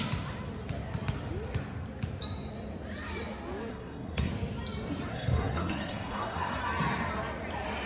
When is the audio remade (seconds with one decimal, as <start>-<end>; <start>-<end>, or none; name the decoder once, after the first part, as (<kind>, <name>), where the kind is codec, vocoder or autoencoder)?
3.7-4.3 (codec, SNAC); 5.1-6.6